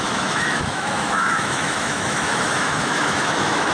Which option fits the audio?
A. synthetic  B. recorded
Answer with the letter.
A